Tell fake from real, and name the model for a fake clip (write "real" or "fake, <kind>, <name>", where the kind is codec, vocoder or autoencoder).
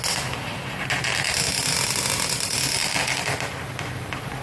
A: real